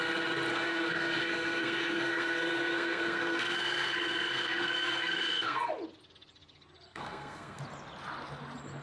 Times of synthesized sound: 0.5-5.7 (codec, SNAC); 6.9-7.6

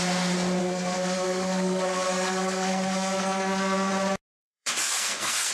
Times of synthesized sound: 0.6-3.9 (codec, SNAC); 4.4-5.5